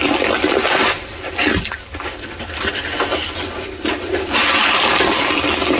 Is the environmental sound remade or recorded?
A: recorded